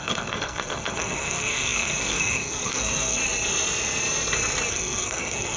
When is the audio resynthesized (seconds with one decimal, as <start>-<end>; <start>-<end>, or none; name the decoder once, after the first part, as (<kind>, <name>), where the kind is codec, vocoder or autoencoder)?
0.0-3.2 (codec, SNAC); 4.7-5.6